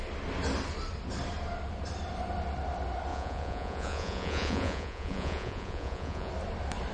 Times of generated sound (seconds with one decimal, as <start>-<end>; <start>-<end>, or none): 3.1-6.3